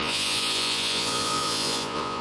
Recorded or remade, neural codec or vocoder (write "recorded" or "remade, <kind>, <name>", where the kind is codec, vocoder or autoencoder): remade, vocoder, Vocos